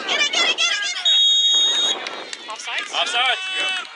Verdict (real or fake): real